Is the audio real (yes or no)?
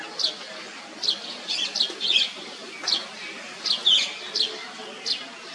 yes